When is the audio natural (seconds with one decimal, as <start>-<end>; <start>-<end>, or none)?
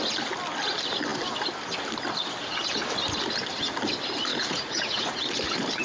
0.0-4.3; 5.2-5.8